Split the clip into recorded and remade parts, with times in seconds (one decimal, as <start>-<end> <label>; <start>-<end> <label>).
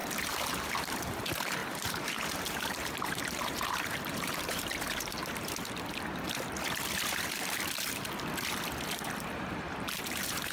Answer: 0.0-5.2 remade; 5.2-9.2 recorded; 9.2-10.5 remade